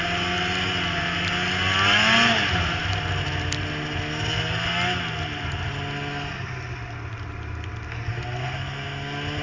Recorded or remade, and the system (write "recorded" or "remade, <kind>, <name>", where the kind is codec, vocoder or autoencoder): recorded